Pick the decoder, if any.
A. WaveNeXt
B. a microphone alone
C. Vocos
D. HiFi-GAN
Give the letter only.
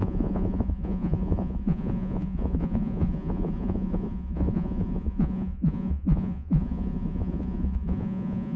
C